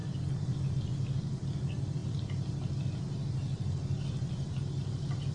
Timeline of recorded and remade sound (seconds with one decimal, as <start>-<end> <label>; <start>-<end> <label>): 0.0-5.3 recorded